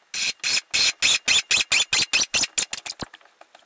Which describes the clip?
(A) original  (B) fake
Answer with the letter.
A